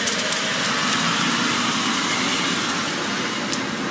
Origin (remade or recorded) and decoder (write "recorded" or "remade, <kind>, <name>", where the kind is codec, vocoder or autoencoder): recorded